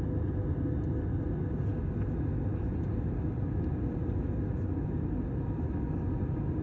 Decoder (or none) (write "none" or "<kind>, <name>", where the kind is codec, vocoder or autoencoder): none